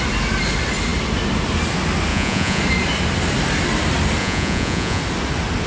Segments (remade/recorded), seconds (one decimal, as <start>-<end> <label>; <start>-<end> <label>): 0.0-2.1 recorded; 2.1-2.6 remade; 2.6-4.2 recorded; 4.2-5.0 remade; 5.0-5.7 recorded

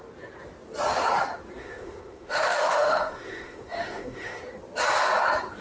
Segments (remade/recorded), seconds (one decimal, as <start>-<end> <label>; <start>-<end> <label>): 0.0-1.6 recorded; 1.6-4.4 remade; 4.4-5.6 recorded

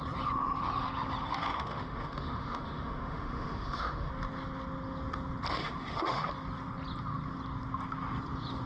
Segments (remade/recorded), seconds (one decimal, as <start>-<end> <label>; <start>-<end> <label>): 0.0-1.3 recorded; 1.3-4.1 remade; 4.1-5.5 recorded; 5.5-6.3 remade; 6.3-8.7 recorded

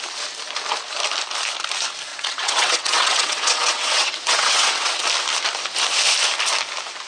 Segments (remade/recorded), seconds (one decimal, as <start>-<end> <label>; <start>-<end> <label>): 0.0-2.1 recorded; 2.1-5.0 remade; 5.0-7.1 recorded

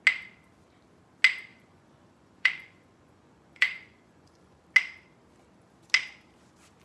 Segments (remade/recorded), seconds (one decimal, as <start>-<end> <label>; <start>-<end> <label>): 0.0-1.5 recorded; 1.5-4.6 remade; 4.6-6.8 recorded

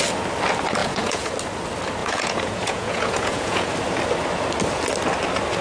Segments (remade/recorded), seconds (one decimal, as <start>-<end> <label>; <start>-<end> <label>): 0.0-0.8 recorded; 0.8-1.3 remade; 1.3-2.0 recorded; 2.0-3.7 remade; 3.7-5.6 recorded